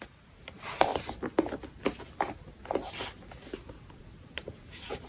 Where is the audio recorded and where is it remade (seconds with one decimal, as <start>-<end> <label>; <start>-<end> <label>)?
0.0-0.9 remade; 0.9-4.0 recorded; 4.0-5.1 remade